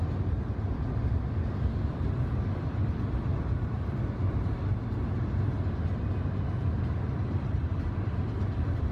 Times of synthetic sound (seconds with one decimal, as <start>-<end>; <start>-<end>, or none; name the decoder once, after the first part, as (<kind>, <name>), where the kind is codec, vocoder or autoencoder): 0.7-3.3 (vocoder, BigVGAN v2); 7.1-8.9